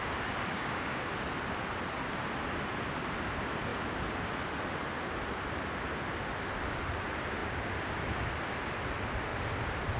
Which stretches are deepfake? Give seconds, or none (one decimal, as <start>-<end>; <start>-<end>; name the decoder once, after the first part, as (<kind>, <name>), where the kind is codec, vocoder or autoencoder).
0.5-1.1 (codec, DAC)